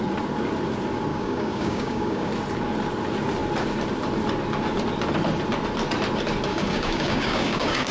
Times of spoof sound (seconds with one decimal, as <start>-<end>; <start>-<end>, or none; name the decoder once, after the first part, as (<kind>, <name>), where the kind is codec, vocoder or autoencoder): 1.1-2.3 (codec, DAC); 6.5-7.9